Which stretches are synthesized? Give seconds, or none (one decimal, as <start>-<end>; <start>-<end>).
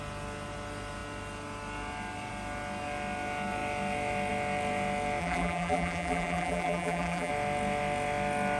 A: 5.2-7.3